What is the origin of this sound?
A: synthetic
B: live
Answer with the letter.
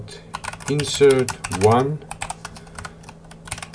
B